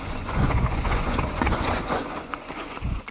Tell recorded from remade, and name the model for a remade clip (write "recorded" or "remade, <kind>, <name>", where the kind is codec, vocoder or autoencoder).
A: remade, vocoder, Vocos